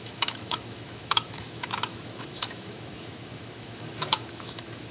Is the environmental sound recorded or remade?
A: remade